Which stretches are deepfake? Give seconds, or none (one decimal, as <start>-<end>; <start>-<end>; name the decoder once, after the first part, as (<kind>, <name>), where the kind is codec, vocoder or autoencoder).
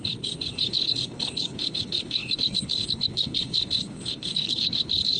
0.0-5.2 (codec, HILCodec)